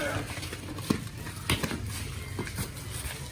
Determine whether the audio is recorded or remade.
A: recorded